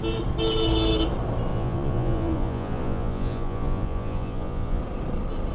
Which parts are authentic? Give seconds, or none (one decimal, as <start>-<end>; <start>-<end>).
0.0-1.5; 4.8-5.5

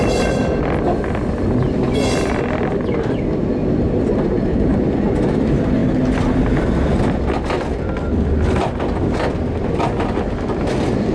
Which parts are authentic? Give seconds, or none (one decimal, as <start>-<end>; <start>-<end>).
0.0-11.1